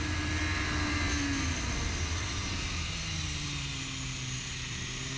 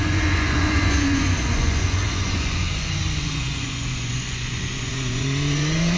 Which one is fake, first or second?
second